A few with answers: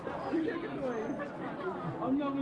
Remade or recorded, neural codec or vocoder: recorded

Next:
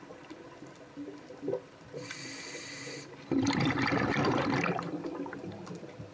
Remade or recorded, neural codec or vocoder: remade, vocoder, BigVGAN v2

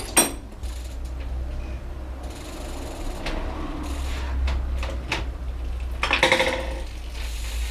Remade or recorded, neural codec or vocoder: recorded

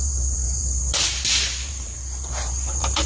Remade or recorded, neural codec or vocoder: remade, vocoder, BigVGAN v2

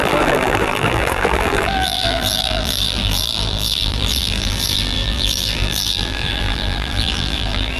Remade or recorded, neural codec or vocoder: remade, vocoder, BigVGAN v2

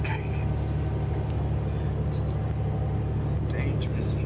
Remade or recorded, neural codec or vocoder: recorded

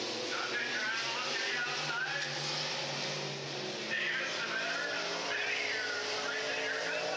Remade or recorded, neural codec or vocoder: recorded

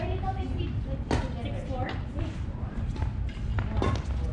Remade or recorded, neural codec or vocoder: recorded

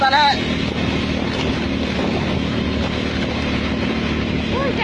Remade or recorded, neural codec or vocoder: recorded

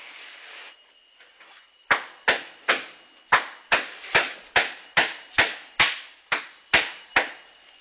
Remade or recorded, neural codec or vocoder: recorded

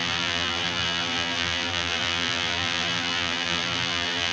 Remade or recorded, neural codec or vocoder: remade, vocoder, BigVGAN v2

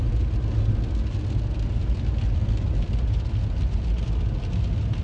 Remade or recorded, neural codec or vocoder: recorded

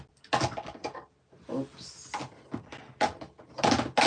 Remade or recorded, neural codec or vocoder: recorded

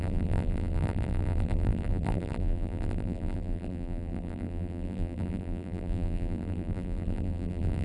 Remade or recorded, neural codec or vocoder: remade, vocoder, BigVGAN v2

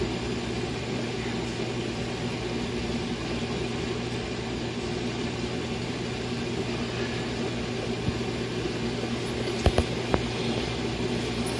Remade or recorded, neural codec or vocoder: recorded